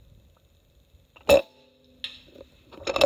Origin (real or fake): real